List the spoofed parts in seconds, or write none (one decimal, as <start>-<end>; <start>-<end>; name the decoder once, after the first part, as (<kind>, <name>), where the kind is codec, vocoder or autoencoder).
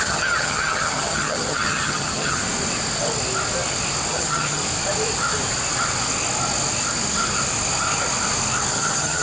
0.0-2.4 (vocoder, HiFi-GAN); 4.1-4.6; 8.7-9.2